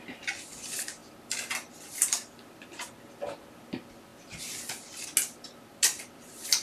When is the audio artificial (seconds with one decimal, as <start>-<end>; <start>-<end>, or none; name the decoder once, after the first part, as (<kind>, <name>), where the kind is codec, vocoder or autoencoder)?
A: none